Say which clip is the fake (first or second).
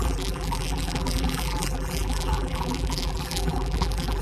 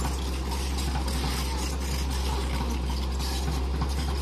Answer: first